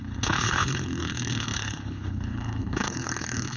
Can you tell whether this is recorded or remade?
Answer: remade